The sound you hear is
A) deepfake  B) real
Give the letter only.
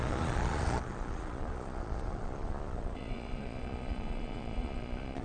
A